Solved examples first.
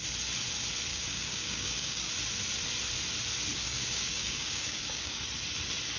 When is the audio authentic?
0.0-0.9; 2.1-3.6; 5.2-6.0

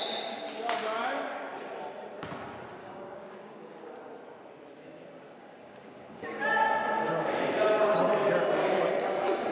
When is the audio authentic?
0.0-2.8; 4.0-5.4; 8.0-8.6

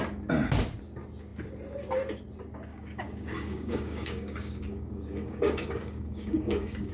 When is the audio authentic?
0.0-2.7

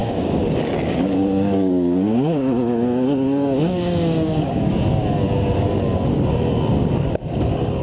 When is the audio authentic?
4.7-7.8

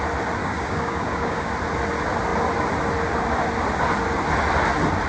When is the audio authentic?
0.0-0.4; 1.5-5.1